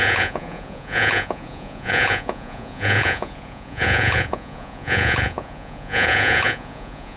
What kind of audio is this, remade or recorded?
remade